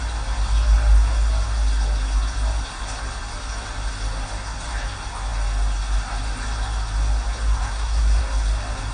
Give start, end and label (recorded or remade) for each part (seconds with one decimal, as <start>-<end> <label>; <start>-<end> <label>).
0.0-7.6 recorded; 7.6-8.2 remade; 8.2-8.9 recorded